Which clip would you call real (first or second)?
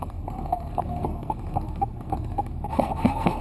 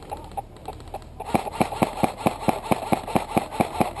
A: second